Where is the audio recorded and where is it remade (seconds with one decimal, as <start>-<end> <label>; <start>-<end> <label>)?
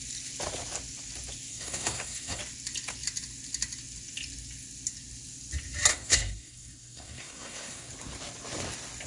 0.0-1.5 recorded; 1.5-2.4 remade; 2.4-5.9 recorded; 5.9-7.9 remade; 7.9-9.1 recorded